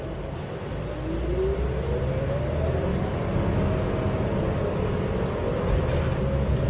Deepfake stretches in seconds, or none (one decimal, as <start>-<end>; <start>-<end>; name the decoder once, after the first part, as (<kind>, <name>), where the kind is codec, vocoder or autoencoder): none

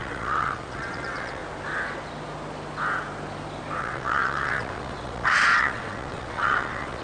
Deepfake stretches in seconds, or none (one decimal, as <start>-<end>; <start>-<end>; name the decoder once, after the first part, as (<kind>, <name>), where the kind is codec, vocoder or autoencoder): 0.0-1.4 (vocoder, WaveNeXt); 3.8-7.0

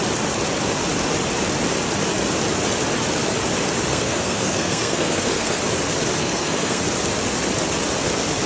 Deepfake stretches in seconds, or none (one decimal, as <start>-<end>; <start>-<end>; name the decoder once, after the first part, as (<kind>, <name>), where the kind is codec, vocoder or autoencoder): 3.9-5.6 (codec, SNAC); 6.2-6.8

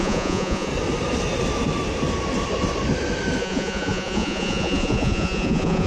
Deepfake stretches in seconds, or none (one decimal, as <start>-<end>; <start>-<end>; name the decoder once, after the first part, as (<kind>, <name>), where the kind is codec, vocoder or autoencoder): 0.0-0.7 (vocoder, Vocos); 3.4-5.9

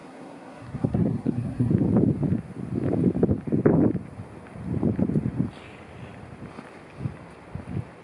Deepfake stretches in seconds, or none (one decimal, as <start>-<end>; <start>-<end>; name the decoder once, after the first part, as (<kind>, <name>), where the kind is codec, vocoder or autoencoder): 0.0-1.7 (codec, SNAC)

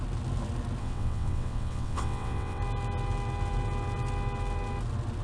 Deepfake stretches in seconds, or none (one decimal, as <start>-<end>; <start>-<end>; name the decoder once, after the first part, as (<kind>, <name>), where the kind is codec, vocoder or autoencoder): 0.8-2.6 (vocoder, WaveNeXt)